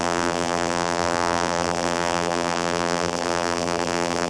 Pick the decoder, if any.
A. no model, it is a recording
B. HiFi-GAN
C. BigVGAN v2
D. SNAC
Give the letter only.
C